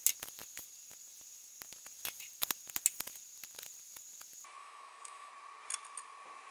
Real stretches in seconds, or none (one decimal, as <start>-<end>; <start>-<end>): 0.0-4.6; 5.3-6.5